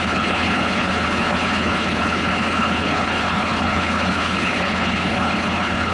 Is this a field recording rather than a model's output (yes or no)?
no